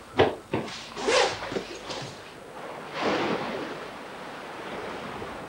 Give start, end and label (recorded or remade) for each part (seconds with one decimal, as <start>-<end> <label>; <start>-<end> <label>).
0.0-5.5 recorded